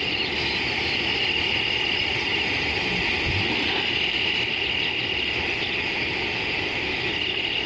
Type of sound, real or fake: real